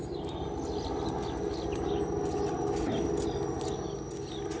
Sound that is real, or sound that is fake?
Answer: real